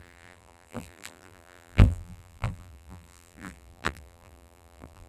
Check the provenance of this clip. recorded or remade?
remade